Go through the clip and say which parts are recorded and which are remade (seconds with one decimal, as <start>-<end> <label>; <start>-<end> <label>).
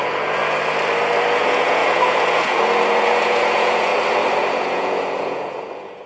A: 0.0-0.4 remade; 0.4-1.4 recorded; 1.4-3.9 remade; 3.9-4.4 recorded; 4.4-6.1 remade